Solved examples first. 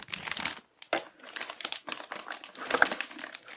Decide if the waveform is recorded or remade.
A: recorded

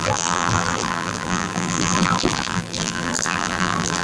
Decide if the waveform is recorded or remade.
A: remade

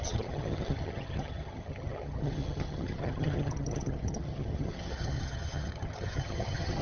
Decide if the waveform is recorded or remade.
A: remade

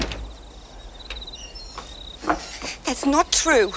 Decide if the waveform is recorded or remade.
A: recorded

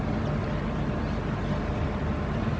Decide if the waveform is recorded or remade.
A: recorded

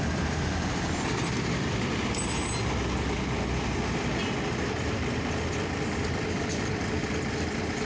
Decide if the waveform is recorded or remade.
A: recorded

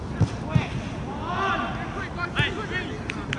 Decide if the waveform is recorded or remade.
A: recorded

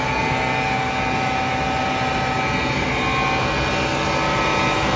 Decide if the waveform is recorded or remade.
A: recorded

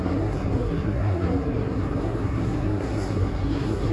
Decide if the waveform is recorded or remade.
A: remade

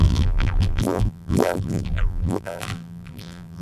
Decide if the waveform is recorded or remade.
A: remade